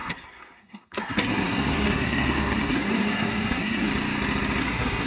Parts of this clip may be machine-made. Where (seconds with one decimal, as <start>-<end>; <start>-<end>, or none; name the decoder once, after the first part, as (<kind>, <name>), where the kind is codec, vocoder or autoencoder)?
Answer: 0.0-3.9 (codec, SNAC); 4.6-5.1